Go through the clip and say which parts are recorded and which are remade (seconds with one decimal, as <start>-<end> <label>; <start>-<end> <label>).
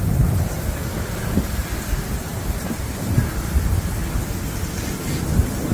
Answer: 0.0-5.7 recorded